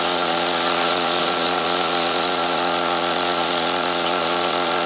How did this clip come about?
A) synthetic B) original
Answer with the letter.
A